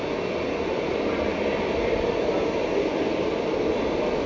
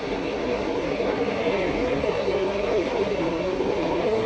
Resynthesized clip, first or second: second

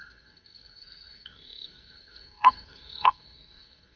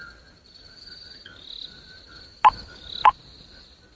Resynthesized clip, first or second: first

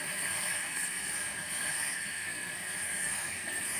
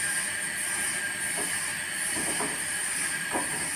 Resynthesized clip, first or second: first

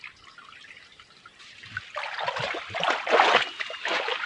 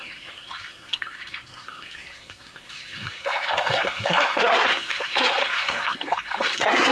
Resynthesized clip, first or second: second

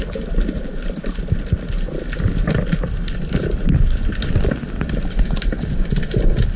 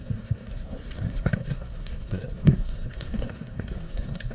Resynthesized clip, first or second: second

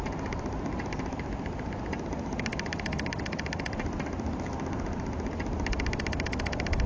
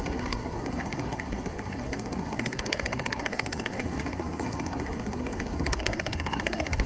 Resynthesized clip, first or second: second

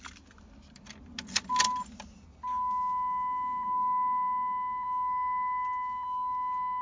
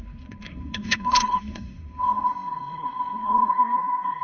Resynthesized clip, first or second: second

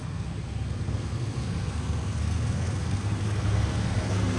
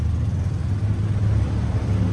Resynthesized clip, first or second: first